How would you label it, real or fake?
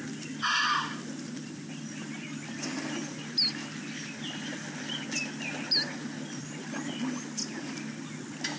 real